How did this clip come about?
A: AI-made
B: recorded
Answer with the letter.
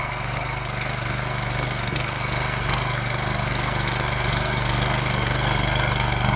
A